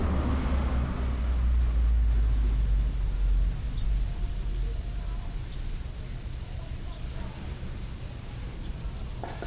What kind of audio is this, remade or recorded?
recorded